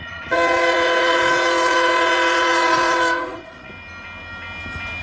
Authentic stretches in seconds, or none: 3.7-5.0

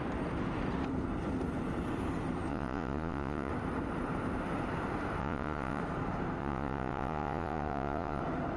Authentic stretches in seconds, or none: 0.0-2.5; 3.5-5.2; 5.8-6.4; 8.2-8.6

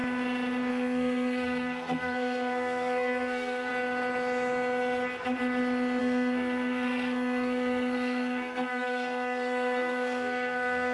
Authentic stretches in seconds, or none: 0.0-0.7; 3.7-6.0

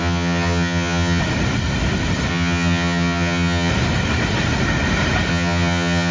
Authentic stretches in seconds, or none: 1.2-2.3; 3.7-5.3

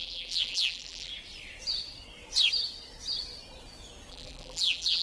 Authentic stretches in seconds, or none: 1.1-4.1

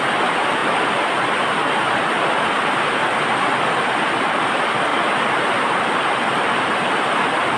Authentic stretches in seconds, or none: 0.0-4.9; 6.0-7.6

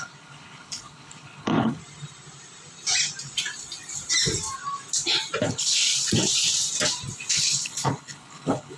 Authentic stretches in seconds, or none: 1.8-5.4; 5.9-7.3